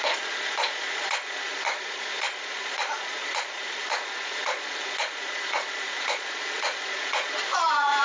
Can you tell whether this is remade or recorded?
remade